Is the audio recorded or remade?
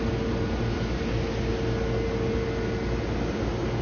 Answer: recorded